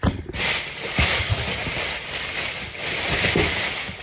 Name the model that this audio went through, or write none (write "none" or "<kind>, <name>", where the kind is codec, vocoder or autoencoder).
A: none